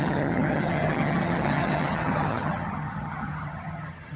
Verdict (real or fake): fake